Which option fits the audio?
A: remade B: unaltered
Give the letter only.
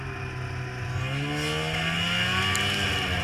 B